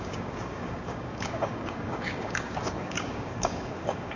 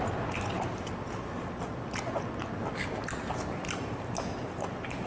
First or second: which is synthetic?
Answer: first